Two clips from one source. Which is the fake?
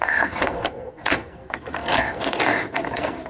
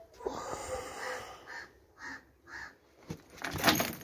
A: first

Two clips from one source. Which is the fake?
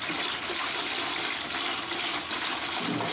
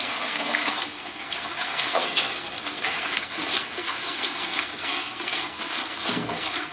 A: second